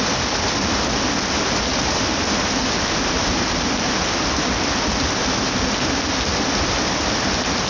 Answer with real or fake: real